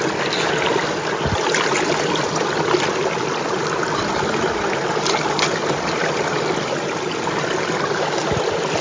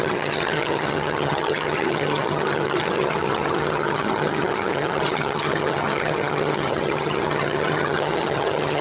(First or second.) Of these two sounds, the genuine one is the first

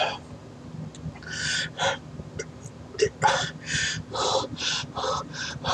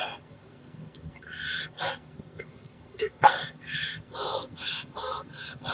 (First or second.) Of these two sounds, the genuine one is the first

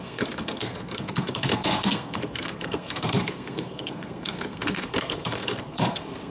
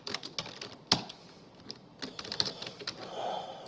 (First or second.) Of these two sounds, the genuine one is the second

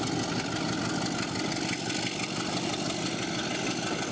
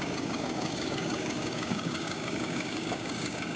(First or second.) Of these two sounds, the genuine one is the first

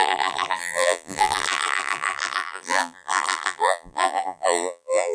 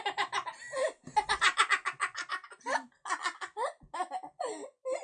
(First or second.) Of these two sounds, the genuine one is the second